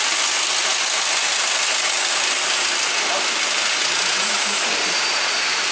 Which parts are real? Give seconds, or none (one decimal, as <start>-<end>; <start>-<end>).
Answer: 0.0-3.8; 4.7-5.7